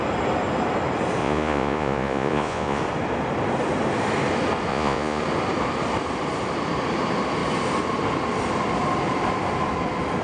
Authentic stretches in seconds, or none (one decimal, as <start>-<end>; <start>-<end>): 0.0-1.2; 2.8-4.7; 5.2-10.2